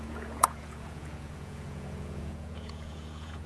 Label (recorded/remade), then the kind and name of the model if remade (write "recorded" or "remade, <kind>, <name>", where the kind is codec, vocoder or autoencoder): remade, vocoder, Vocos